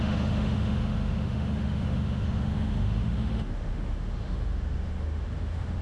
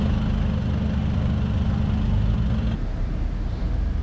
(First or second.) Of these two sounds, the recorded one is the second